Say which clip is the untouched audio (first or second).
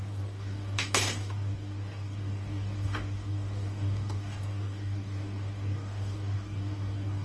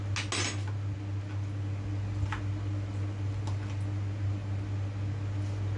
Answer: second